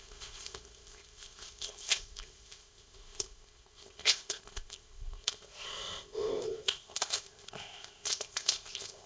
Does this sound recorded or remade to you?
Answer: remade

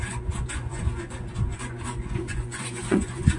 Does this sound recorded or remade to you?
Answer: remade